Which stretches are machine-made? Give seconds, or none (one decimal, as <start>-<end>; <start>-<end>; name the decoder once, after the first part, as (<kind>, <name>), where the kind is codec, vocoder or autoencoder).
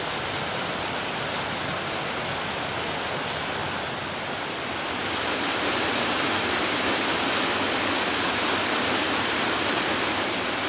0.0-3.6 (vocoder, BigVGAN v2); 4.6-10.7